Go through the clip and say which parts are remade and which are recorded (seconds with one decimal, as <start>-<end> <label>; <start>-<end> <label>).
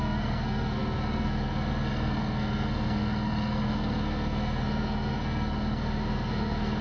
0.0-6.8 remade